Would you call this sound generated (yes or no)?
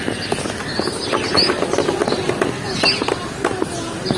no